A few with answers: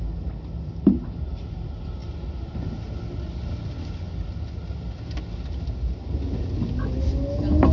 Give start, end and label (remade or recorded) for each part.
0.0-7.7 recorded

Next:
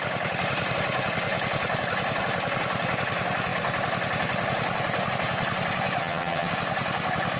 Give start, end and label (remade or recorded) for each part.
0.0-6.0 recorded; 6.0-6.5 remade; 6.5-7.4 recorded

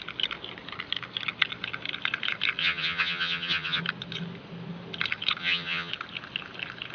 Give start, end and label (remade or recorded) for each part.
0.0-2.6 recorded; 2.6-3.8 remade; 3.8-5.4 recorded; 5.4-5.9 remade; 5.9-6.9 recorded

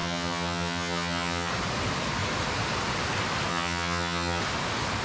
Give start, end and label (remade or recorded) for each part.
0.0-1.5 remade; 1.5-3.5 recorded; 3.5-4.4 remade; 4.4-5.0 recorded

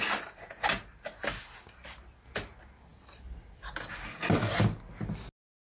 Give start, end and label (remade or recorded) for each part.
0.0-5.6 recorded

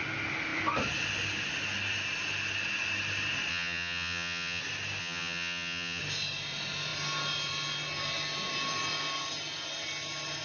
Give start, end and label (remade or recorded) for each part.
0.0-3.5 recorded; 3.5-4.6 remade; 4.6-5.0 recorded; 5.0-6.0 remade; 6.0-10.4 recorded

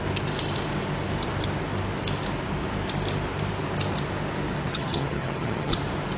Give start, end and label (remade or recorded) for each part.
0.0-4.7 recorded; 4.7-5.8 remade; 5.8-6.2 recorded